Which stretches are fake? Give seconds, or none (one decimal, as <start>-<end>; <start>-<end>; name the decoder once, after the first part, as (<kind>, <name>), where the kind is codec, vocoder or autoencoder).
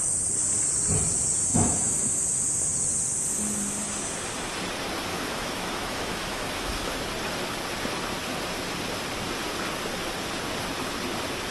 1.5-2.2 (autoencoder, DAC-VAE); 5.1-7.0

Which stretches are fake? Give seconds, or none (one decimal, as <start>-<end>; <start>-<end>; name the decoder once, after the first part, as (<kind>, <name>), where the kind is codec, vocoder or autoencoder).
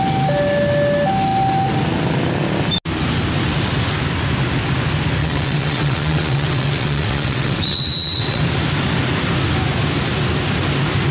5.2-8.4 (vocoder, WaveNeXt)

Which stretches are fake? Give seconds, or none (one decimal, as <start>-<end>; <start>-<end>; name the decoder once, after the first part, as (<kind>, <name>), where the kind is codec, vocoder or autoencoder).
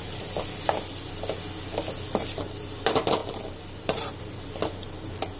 none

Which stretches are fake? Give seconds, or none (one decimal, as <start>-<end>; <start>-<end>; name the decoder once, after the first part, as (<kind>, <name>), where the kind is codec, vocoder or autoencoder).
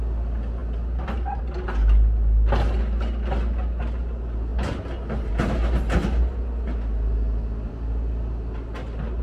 none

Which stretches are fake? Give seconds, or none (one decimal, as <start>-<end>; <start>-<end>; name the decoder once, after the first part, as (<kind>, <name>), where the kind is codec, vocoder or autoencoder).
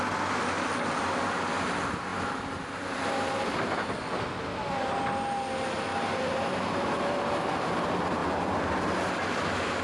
2.1-3.9 (vocoder, BigVGAN v2); 5.9-7.2; 8.2-9.1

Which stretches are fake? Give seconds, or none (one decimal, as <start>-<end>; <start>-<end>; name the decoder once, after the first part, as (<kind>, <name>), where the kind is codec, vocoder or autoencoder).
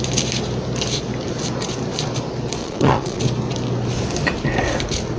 2.6-3.2 (vocoder, Vocos)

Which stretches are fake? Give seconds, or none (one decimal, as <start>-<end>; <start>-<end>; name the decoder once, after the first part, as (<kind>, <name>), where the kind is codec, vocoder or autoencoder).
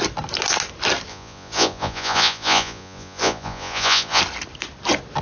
1.1-4.2 (vocoder, Vocos)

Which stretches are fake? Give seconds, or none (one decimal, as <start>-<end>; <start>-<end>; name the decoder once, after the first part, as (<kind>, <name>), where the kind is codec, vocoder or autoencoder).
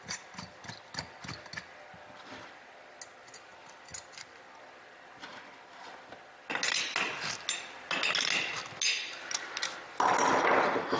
none